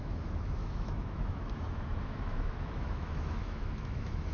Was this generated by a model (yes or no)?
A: yes